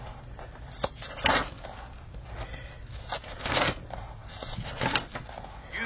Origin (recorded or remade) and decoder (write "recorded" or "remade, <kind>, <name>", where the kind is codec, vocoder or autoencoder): recorded